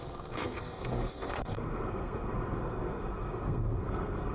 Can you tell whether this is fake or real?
fake